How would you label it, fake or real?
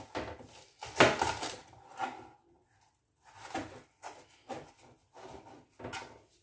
real